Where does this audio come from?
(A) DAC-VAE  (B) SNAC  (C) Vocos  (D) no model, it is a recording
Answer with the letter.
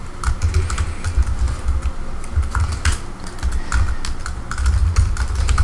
D